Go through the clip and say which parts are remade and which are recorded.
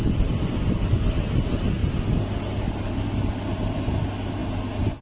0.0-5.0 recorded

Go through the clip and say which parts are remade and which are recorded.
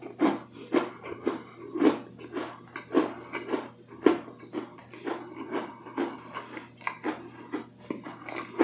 0.0-8.6 recorded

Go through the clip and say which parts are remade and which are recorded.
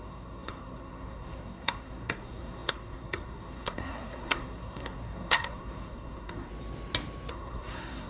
0.0-6.5 remade; 6.5-7.3 recorded; 7.3-8.1 remade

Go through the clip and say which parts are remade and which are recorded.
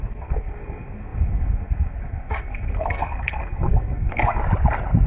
0.0-4.4 remade; 4.4-5.1 recorded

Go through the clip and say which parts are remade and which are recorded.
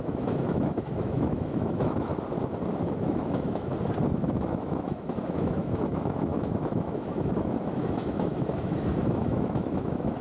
0.0-2.1 remade; 2.1-2.7 recorded; 2.7-3.7 remade; 3.7-4.2 recorded; 4.2-10.2 remade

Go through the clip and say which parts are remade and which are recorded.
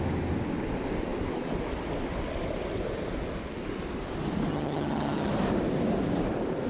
0.0-4.5 recorded; 4.5-5.3 remade; 5.3-6.7 recorded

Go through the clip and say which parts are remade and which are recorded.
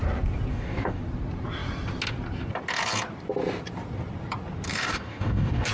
0.0-0.5 recorded; 0.5-1.0 remade; 1.0-4.7 recorded; 4.7-5.7 remade